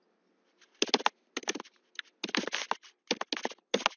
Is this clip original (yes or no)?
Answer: yes